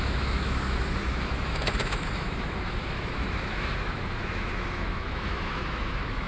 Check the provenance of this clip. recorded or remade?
remade